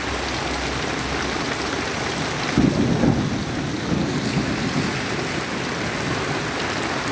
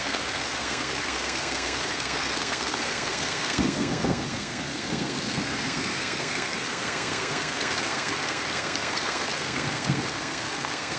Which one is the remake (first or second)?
second